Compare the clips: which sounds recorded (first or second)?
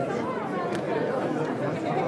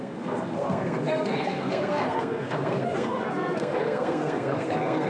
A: first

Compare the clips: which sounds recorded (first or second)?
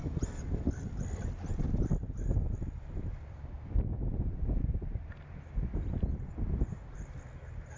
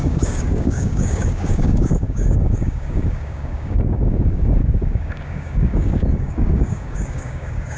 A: first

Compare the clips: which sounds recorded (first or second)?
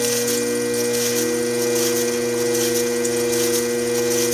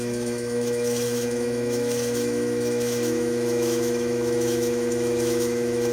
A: first